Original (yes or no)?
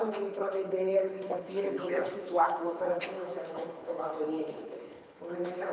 no